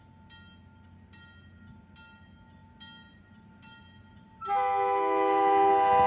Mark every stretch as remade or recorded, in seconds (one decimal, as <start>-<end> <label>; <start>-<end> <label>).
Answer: 0.0-6.1 recorded